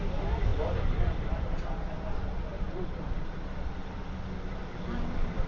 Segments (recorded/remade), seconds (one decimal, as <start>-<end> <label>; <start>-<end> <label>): 0.0-0.5 recorded; 0.5-1.7 remade; 1.7-2.5 recorded; 2.5-3.5 remade; 3.5-4.6 recorded; 4.6-5.5 remade